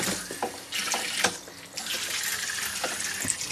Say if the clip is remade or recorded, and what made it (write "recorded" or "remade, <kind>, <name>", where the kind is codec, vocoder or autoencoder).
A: recorded